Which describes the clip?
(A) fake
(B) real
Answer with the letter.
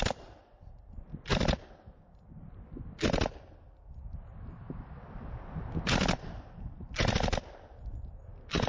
B